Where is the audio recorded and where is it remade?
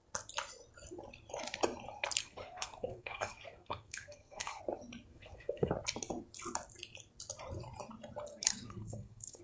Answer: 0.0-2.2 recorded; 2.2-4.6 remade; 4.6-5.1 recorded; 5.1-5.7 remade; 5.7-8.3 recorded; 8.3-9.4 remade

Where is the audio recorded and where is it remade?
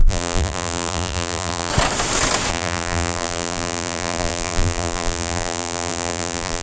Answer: 0.0-1.7 remade; 1.7-2.5 recorded; 2.5-6.6 remade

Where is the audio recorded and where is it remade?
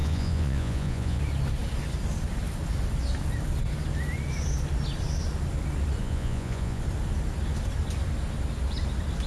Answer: 0.0-1.2 remade; 1.2-6.0 recorded; 6.0-6.8 remade; 6.8-9.3 recorded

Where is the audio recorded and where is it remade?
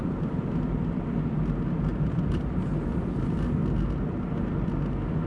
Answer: 0.0-2.7 remade; 2.7-3.2 recorded; 3.2-3.6 remade; 3.6-5.3 recorded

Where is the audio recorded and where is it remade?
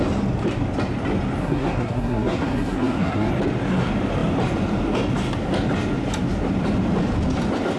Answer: 0.0-1.4 recorded; 1.4-3.3 remade; 3.3-7.8 recorded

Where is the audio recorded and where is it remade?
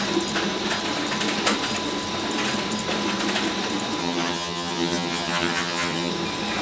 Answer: 0.0-4.0 recorded; 4.0-6.1 remade; 6.1-6.6 recorded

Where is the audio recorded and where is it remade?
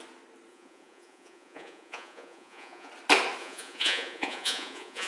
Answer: 0.0-0.5 recorded; 0.5-2.9 remade; 2.9-3.4 recorded; 3.4-5.1 remade